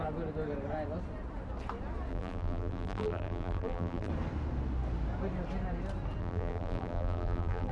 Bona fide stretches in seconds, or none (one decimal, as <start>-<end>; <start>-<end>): 0.0-2.1; 4.1-6.2